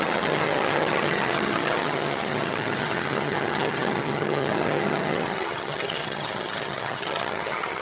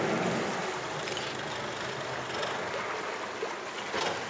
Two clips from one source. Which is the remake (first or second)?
first